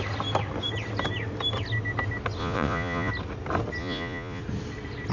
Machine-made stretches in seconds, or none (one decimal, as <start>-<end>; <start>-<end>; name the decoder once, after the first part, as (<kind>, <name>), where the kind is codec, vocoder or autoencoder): 2.4-3.1 (vocoder, Vocos); 3.8-4.4